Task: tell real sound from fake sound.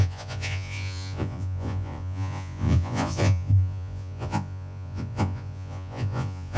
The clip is fake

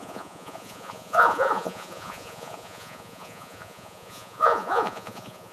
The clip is fake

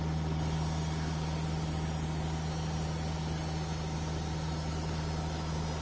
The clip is real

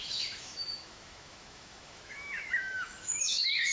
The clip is fake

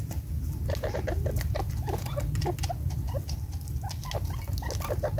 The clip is real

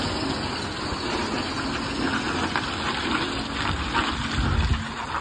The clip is real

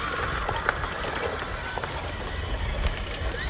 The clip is real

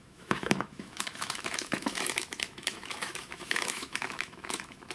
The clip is fake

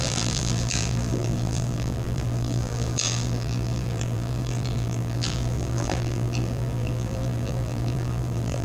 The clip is fake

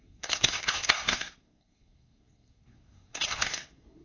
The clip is fake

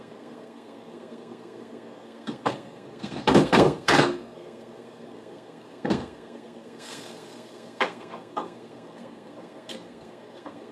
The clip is fake